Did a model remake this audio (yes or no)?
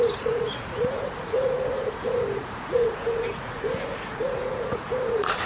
yes